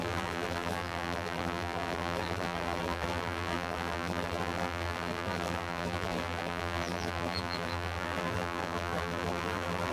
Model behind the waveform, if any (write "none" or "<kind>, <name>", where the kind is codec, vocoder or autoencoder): vocoder, BigVGAN v2